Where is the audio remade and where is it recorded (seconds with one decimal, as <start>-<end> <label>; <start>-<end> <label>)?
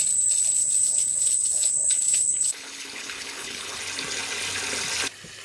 0.0-0.6 recorded; 0.6-3.8 remade; 3.8-5.4 recorded